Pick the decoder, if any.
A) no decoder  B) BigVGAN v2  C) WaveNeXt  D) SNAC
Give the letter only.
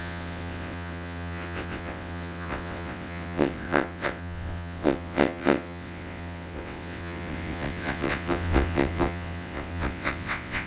C